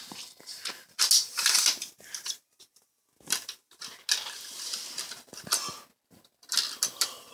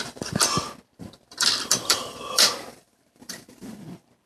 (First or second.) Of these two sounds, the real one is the first